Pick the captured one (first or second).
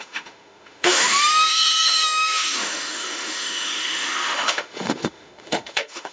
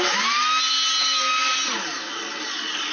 second